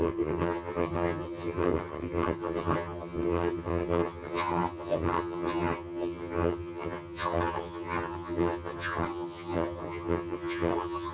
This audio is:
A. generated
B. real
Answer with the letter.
A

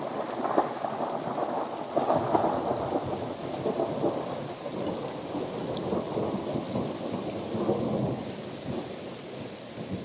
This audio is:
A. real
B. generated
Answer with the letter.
A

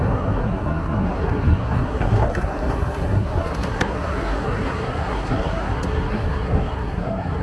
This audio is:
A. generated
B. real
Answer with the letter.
A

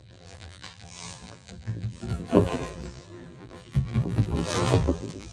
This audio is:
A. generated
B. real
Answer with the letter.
A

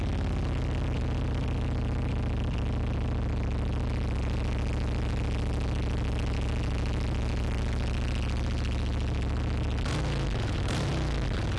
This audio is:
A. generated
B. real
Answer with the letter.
B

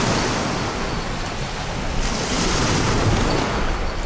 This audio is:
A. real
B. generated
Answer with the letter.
A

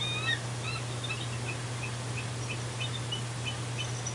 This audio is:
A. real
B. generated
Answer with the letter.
A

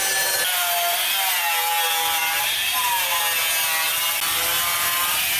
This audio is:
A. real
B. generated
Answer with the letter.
A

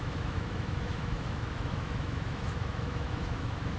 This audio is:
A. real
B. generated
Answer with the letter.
B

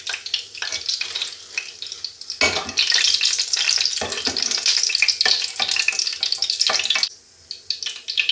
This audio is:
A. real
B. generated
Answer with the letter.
A